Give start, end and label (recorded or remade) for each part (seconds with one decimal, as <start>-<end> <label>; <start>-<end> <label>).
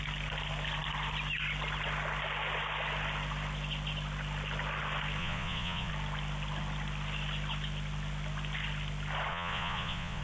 0.0-5.2 recorded; 5.2-5.9 remade; 5.9-9.3 recorded; 9.3-10.2 remade